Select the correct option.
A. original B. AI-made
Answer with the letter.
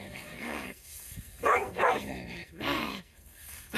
B